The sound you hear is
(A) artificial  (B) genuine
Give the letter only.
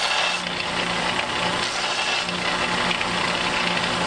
B